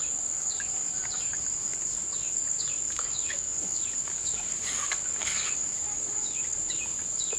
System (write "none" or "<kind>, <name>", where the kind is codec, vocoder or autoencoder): codec, DAC